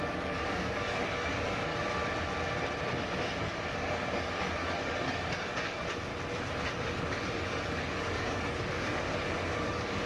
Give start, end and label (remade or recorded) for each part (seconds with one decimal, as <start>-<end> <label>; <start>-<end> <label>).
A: 0.0-1.7 remade; 1.7-3.4 recorded; 3.4-6.1 remade; 6.1-6.7 recorded; 6.7-10.1 remade